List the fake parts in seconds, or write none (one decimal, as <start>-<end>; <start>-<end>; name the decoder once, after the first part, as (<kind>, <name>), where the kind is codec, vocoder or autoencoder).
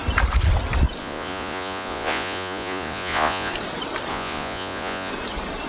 1.0-3.5 (vocoder, Vocos); 4.1-5.1